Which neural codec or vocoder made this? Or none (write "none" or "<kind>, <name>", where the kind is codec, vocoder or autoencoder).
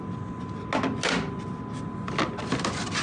none